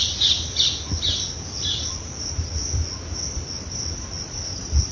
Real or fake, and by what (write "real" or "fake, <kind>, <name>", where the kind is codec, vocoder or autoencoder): real